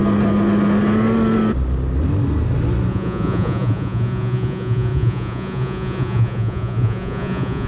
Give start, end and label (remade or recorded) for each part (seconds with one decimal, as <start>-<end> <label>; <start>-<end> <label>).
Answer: 0.0-2.9 recorded; 2.9-7.7 remade